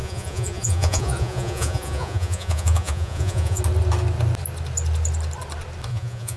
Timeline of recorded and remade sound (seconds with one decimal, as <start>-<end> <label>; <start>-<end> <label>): 0.0-3.6 remade; 3.6-5.9 recorded; 5.9-6.4 remade